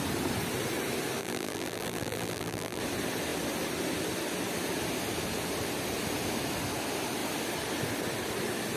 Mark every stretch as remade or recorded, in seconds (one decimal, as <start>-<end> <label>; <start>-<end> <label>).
0.0-1.2 recorded; 1.2-2.8 remade; 2.8-8.8 recorded